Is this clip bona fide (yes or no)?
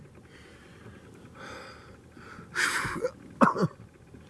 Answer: yes